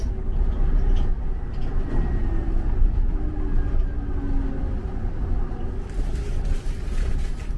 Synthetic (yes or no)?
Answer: no